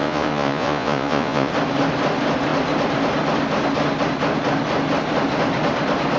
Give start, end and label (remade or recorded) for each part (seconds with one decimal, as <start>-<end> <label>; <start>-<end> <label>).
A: 0.0-1.5 remade; 1.5-6.2 recorded